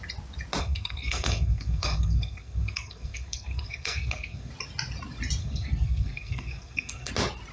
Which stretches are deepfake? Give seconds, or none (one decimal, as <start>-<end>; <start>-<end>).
0.6-4.5; 5.4-7.1